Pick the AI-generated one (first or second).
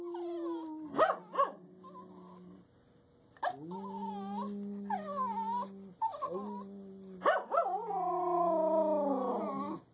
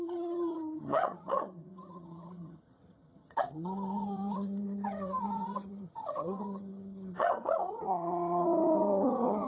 second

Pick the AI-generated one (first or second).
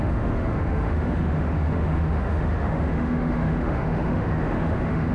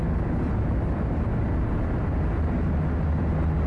first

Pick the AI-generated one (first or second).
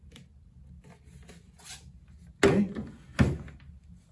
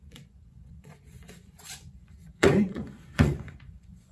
second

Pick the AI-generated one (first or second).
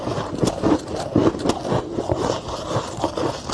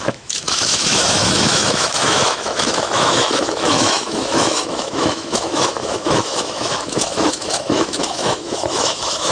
second